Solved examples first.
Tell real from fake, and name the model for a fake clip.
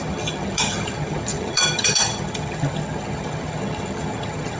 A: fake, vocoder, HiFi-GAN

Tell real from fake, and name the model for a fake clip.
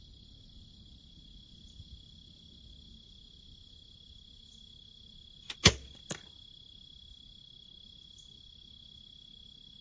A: real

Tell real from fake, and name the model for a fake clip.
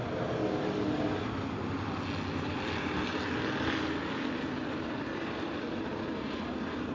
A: real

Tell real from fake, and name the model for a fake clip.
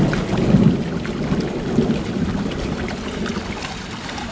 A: real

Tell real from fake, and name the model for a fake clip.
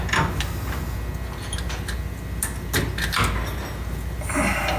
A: real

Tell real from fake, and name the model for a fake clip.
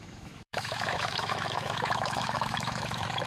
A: fake, autoencoder, DAC-VAE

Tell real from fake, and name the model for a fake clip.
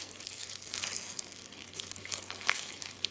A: fake, codec, SNAC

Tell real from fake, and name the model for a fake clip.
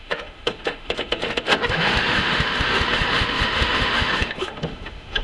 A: fake, autoencoder, DAC-VAE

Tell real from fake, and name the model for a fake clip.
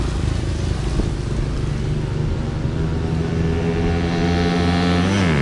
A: real